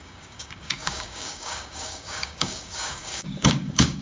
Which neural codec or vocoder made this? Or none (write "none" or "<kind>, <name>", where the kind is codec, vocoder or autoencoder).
codec, DAC